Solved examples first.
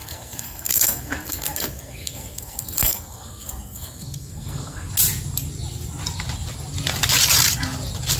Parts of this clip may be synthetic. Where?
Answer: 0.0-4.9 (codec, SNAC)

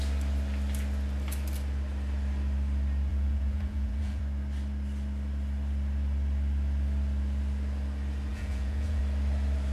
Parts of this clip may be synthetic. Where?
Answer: 3.1-4.2 (vocoder, Vocos); 8.3-9.0

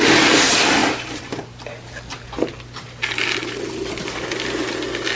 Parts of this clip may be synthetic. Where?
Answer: none